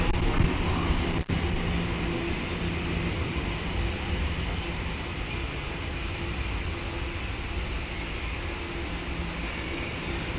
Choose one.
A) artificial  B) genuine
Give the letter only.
B